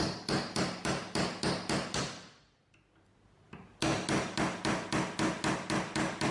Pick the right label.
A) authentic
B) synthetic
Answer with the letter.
A